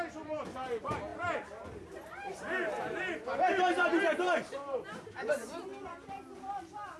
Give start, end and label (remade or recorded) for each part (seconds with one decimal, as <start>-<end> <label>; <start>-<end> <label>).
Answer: 0.0-5.7 remade; 5.7-6.6 recorded; 6.6-7.0 remade